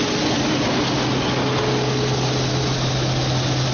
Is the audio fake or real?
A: real